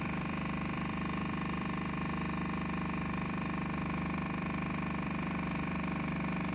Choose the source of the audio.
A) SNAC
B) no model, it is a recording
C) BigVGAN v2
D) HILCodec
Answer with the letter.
C